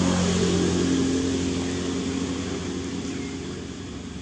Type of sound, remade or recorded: recorded